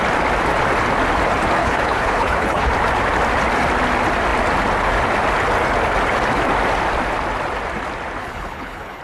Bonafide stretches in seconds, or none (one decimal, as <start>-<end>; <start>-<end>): 0.0-1.6; 2.7-8.2